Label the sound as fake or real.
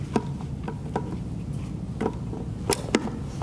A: real